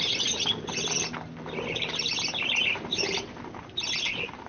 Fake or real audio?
real